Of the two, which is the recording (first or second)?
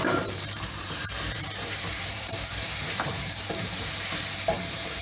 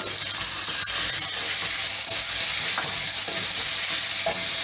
second